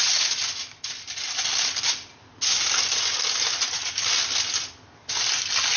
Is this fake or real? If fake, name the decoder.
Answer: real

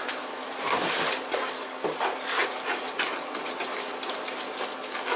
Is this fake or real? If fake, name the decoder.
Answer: real